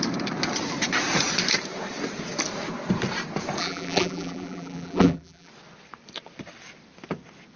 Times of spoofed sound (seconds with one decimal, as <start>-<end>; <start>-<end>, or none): 3.6-5.5